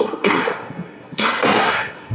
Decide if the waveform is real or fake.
fake